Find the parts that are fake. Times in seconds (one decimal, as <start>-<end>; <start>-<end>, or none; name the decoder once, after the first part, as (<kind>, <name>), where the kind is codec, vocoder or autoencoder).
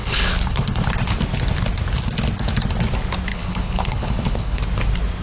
0.0-0.9 (codec, HILCodec); 3.3-4.6